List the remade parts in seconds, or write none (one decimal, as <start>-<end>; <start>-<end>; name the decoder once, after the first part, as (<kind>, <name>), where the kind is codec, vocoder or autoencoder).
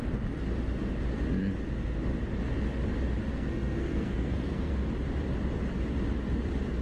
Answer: 3.3-4.9 (codec, SNAC)